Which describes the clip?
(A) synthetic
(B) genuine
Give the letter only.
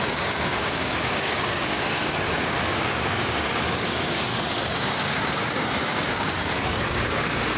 A